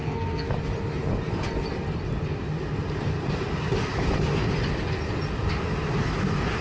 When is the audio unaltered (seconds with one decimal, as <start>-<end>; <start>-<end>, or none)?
0.5-6.6